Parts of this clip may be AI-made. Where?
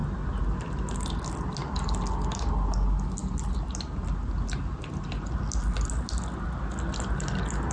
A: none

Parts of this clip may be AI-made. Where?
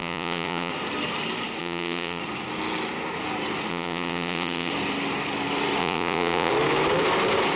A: 0.0-0.7 (vocoder, Vocos); 1.6-2.2; 3.7-4.7; 5.8-6.5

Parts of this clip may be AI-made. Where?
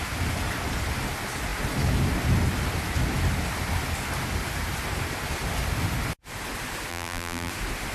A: 6.9-7.5 (vocoder, BigVGAN v2)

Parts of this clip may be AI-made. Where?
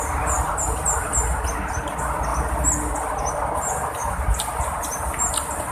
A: none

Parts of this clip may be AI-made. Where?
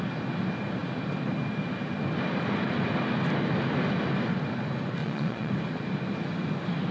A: 5.0-5.5 (vocoder, Vocos)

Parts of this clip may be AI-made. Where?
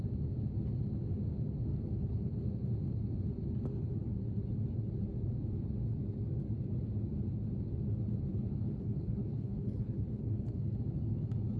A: 1.7-2.4 (codec, HILCodec); 8.3-10.7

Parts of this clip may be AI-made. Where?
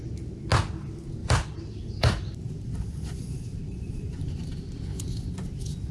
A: 1.2-4.7 (vocoder, BigVGAN v2)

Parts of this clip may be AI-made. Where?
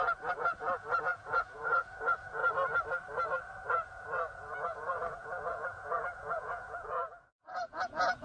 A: 0.0-2.4 (vocoder, Vocos); 3.7-8.2